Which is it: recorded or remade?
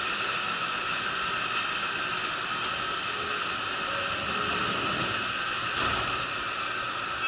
recorded